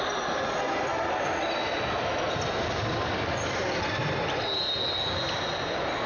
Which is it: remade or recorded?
recorded